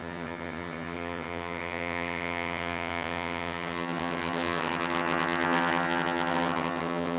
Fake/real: fake